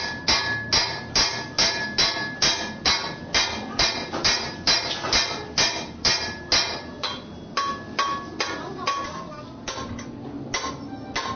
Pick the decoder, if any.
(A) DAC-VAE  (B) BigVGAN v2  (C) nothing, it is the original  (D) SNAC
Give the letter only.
C